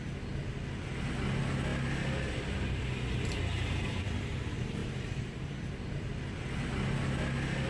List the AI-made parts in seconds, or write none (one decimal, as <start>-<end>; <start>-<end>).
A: 3.5-4.1; 4.8-6.1